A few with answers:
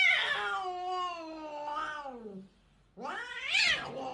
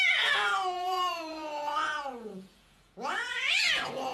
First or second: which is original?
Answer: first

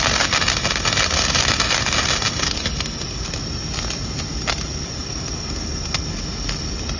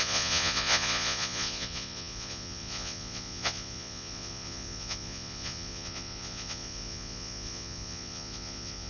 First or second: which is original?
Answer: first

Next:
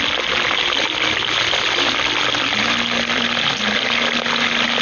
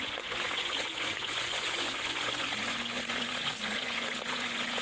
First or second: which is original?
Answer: first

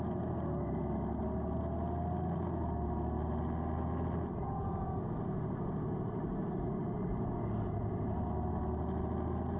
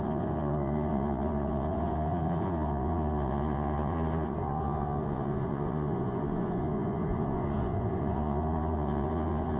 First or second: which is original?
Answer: first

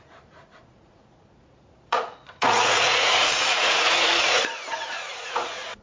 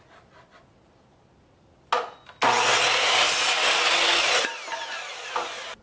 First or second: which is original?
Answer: second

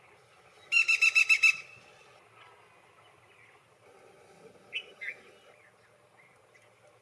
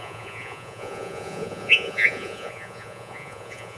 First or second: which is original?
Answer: first